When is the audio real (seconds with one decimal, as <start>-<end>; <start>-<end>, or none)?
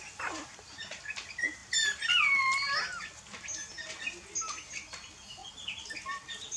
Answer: 0.0-6.6